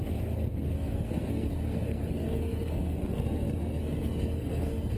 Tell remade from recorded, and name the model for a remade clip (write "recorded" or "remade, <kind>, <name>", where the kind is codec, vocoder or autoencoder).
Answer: remade, codec, SNAC